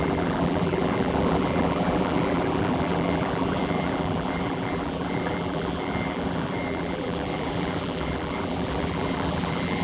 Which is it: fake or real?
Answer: fake